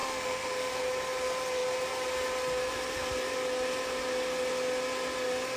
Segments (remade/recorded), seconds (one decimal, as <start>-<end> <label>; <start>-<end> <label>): 0.0-0.7 remade; 0.7-5.6 recorded